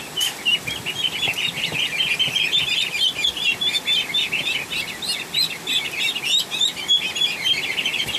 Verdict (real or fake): real